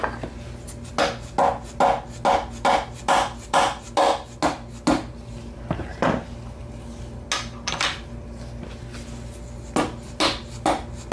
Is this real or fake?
real